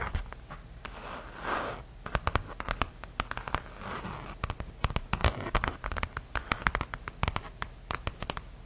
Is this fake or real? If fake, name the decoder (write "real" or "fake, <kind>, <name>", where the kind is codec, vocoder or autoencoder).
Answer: real